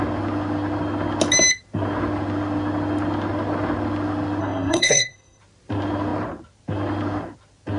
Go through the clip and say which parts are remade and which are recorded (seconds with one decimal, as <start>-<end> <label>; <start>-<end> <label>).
0.0-4.4 recorded; 4.4-5.4 remade; 5.4-7.8 recorded